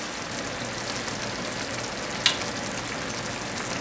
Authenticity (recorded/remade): recorded